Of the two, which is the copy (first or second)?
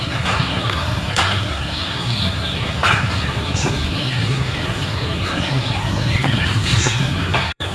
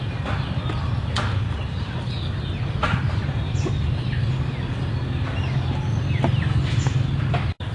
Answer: first